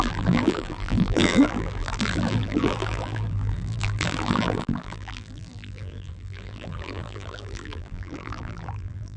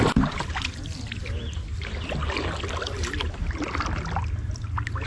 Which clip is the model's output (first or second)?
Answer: first